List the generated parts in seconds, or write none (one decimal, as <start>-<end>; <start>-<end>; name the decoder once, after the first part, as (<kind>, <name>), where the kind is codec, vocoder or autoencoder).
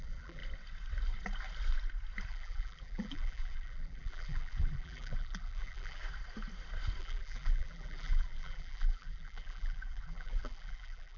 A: 0.0-0.4 (vocoder, BigVGAN v2); 2.3-6.0; 7.0-11.2